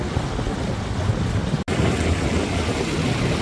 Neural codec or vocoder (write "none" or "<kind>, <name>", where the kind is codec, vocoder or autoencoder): none